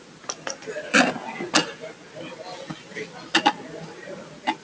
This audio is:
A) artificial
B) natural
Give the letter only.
B